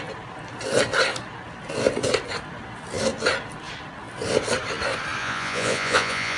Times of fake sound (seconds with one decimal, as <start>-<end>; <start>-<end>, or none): 5.2-6.4